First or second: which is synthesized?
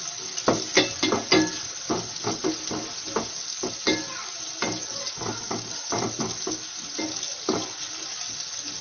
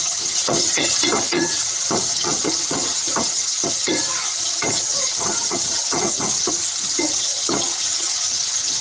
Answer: second